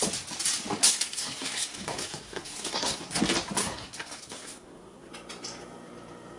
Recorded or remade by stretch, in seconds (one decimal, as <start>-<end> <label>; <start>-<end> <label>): 0.0-0.8 recorded; 0.8-3.2 remade; 3.2-3.6 recorded; 3.6-5.1 remade; 5.1-6.4 recorded